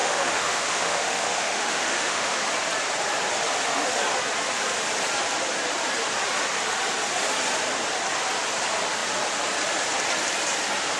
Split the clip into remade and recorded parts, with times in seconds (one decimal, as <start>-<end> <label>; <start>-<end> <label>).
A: 0.0-2.4 remade; 2.4-11.0 recorded